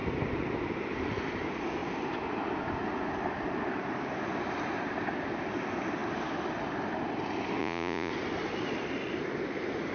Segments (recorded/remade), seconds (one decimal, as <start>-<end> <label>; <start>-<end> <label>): 0.0-7.6 recorded; 7.6-8.1 remade; 8.1-9.9 recorded